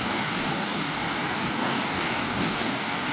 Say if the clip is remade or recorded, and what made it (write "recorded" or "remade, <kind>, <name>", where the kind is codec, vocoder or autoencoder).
remade, codec, DAC